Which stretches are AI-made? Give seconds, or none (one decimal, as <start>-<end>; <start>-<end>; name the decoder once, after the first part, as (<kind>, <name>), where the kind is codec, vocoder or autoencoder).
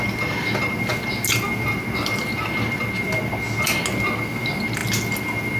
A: none